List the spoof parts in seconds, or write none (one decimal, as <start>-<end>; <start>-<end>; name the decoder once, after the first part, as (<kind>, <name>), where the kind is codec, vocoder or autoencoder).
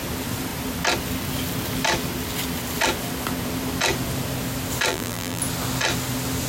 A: 4.9-5.4 (vocoder, BigVGAN v2)